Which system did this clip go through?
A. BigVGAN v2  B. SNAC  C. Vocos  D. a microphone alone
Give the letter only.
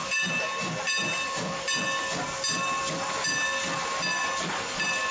D